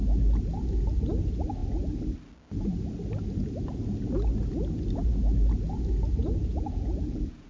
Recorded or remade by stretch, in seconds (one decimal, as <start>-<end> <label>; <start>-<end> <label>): 0.0-6.2 recorded; 6.2-7.5 remade